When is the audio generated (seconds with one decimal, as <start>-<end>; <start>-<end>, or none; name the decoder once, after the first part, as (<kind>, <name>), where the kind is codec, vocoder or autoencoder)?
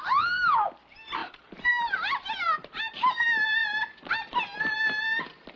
none